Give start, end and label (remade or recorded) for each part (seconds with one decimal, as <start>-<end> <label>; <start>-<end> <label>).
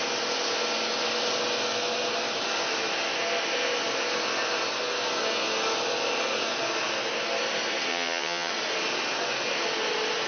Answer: 0.0-7.9 recorded; 7.9-8.5 remade; 8.5-10.3 recorded